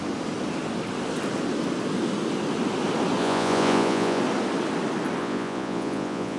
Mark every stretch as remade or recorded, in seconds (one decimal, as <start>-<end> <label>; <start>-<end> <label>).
0.0-3.2 recorded; 3.2-4.2 remade; 4.2-5.2 recorded; 5.2-6.4 remade